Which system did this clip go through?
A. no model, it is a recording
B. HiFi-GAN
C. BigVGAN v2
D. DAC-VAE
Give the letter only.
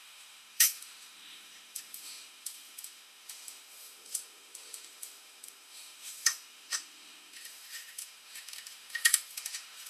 D